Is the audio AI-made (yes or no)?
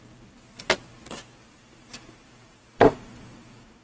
no